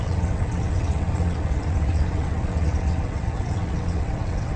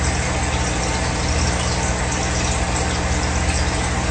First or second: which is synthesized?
first